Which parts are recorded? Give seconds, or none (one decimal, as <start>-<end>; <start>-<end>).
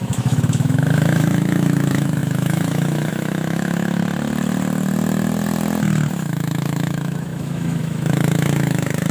4.0-6.1